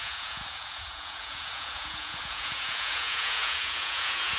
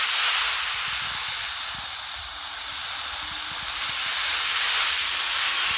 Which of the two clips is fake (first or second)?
first